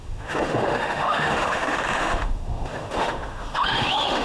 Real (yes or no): no